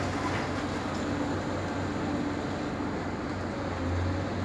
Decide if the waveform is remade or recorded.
recorded